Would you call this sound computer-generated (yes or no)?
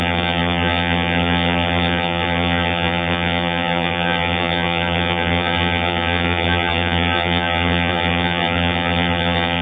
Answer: yes